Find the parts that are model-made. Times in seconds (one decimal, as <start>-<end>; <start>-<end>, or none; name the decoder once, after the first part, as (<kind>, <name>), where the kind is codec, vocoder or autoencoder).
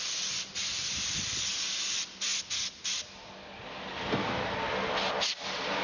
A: none